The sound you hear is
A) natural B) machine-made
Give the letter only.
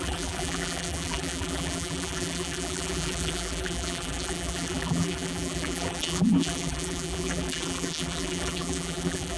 B